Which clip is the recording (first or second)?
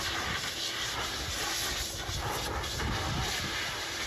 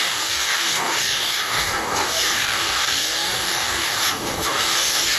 first